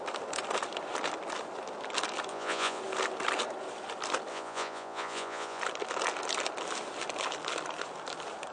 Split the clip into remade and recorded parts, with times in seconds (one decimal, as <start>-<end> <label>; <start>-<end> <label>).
0.0-2.3 recorded; 2.3-2.8 remade; 2.8-4.3 recorded; 4.3-5.6 remade; 5.6-8.5 recorded